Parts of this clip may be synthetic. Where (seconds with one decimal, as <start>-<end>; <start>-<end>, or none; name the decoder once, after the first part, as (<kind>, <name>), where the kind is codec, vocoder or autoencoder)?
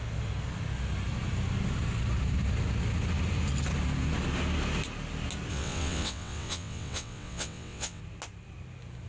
5.5-8.0 (vocoder, WaveNeXt)